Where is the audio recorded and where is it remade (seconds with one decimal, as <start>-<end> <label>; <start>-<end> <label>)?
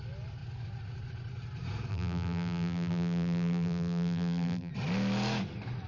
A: 0.0-1.9 recorded; 1.9-4.7 remade; 4.7-5.9 recorded